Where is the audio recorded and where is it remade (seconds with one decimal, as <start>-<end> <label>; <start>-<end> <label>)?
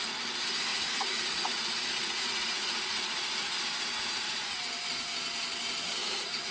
0.0-0.7 recorded; 0.7-4.6 remade; 4.6-6.0 recorded; 6.0-6.5 remade